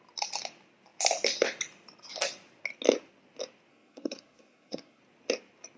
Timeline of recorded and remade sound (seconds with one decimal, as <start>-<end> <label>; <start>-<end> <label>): 0.0-3.7 recorded; 3.7-5.0 remade; 5.0-5.8 recorded